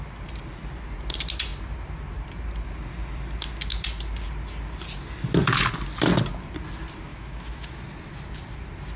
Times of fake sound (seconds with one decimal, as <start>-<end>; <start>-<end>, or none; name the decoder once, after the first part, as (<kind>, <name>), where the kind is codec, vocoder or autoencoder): 7.1-7.7 (autoencoder, DAC-VAE)